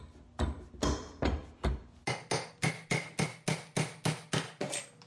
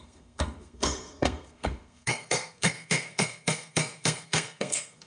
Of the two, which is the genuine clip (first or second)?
first